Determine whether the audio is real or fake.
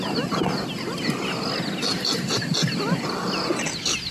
real